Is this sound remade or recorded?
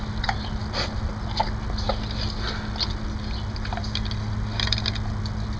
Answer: recorded